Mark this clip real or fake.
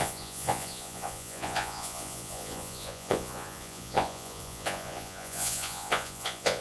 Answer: fake